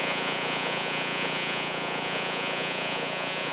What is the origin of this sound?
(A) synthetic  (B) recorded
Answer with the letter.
A